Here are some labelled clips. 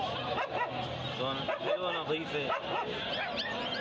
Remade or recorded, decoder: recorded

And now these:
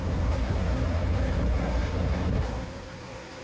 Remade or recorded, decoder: remade, codec, SNAC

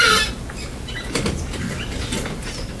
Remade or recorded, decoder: recorded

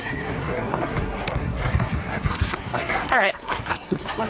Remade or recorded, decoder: remade, codec, SNAC